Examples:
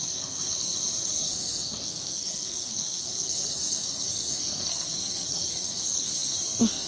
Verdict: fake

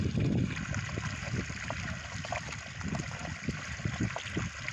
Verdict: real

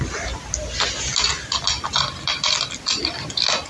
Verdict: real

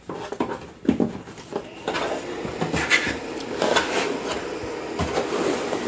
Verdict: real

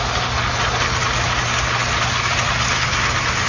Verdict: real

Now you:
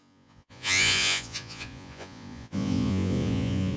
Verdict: fake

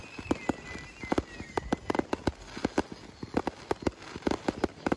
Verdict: real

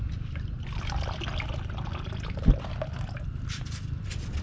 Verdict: real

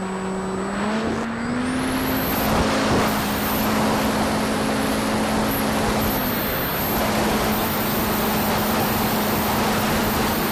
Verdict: real